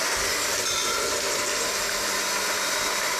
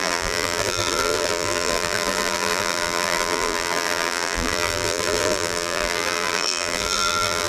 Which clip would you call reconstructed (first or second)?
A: second